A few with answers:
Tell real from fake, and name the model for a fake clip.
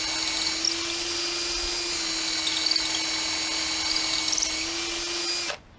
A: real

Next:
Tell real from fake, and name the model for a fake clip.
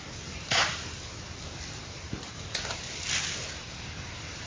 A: real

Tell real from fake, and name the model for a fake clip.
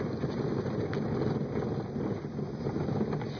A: real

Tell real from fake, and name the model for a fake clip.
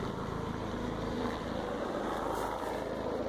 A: fake, vocoder, BigVGAN v2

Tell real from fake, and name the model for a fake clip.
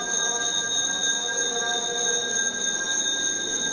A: real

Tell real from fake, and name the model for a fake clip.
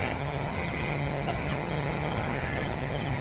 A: fake, vocoder, HiFi-GAN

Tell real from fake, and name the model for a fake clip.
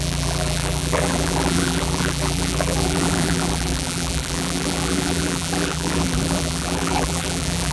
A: fake, vocoder, BigVGAN v2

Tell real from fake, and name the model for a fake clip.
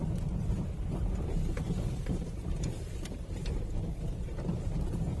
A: fake, vocoder, BigVGAN v2